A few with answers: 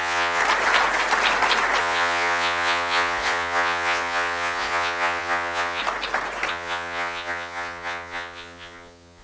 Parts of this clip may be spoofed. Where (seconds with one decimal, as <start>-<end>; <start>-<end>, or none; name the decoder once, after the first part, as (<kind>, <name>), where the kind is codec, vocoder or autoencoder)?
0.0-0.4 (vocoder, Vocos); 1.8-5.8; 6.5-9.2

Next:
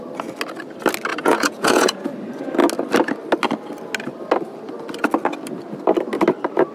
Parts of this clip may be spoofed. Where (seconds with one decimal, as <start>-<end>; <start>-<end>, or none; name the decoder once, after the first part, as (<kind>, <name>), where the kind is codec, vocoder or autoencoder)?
1.1-2.1 (vocoder, Vocos)

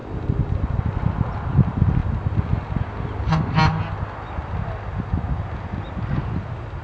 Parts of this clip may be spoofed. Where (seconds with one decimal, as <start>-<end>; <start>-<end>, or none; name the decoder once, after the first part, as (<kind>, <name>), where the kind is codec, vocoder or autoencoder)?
none